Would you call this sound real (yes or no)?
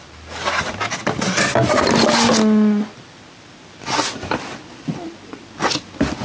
yes